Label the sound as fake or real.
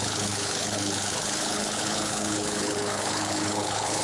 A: fake